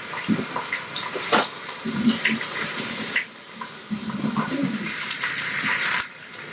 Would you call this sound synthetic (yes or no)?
yes